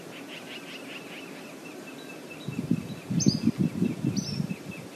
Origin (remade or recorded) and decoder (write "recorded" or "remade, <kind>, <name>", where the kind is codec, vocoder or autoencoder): recorded